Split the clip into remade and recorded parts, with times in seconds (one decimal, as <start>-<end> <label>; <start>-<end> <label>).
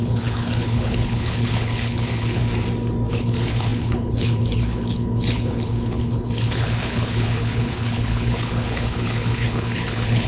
0.0-2.4 remade; 2.4-3.1 recorded; 3.1-10.3 remade